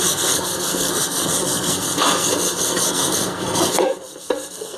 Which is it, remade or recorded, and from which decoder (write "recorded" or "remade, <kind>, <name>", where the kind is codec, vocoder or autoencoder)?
remade, codec, SNAC